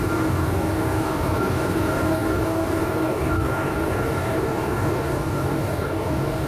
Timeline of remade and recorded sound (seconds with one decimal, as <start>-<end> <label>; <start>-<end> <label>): 0.0-6.5 remade